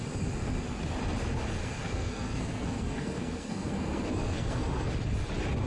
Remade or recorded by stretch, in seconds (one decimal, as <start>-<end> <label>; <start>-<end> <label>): 0.0-1.6 recorded; 1.6-4.9 remade; 4.9-5.7 recorded